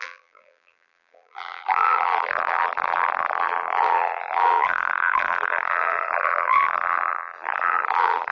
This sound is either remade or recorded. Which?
remade